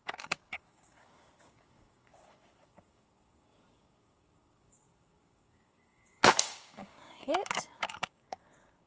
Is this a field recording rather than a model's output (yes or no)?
no